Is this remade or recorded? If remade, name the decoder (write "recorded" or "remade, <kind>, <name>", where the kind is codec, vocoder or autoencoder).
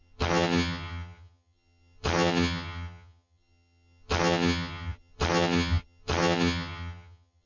remade, vocoder, HiFi-GAN